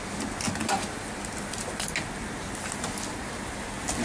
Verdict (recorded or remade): recorded